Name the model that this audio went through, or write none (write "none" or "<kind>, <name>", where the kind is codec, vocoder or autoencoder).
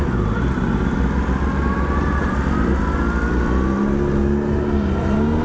none